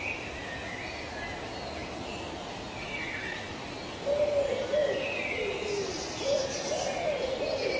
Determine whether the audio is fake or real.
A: real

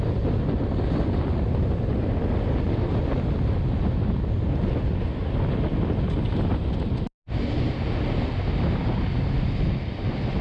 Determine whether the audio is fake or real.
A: real